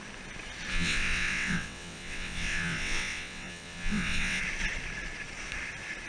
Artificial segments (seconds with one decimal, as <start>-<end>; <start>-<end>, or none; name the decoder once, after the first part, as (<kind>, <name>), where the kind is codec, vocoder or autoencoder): 0.7-4.4 (vocoder, WaveNeXt)